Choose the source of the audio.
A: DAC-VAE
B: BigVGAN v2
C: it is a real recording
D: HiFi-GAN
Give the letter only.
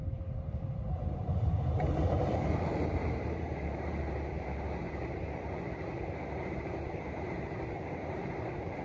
B